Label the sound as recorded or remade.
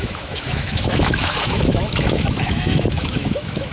remade